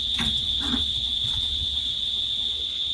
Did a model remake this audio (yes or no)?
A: yes